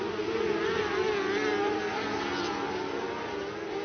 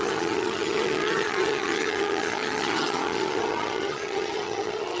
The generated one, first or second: second